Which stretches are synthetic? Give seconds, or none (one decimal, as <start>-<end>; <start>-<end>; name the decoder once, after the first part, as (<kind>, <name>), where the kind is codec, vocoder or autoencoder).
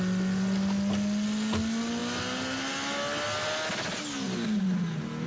none